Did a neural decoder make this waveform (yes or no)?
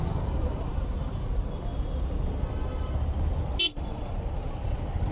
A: no